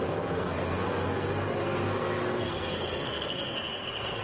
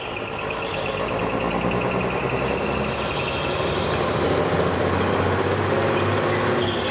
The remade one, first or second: first